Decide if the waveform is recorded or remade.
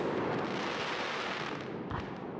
recorded